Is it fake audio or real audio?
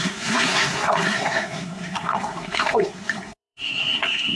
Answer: fake